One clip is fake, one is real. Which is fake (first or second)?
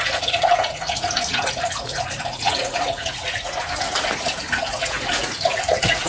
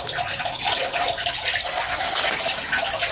first